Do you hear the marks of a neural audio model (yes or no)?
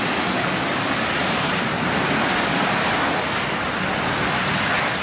no